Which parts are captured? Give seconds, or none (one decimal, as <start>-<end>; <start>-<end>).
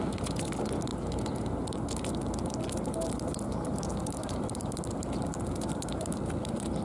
0.0-6.8